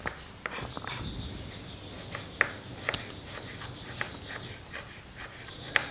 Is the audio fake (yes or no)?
no